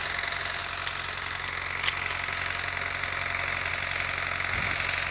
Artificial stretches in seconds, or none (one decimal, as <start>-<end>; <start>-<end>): none